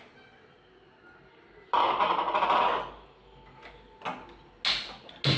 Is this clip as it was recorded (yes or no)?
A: yes